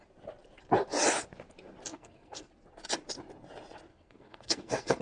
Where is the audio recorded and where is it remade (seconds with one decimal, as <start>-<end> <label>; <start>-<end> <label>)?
0.0-1.9 recorded; 1.9-2.5 remade; 2.5-3.9 recorded; 3.9-5.0 remade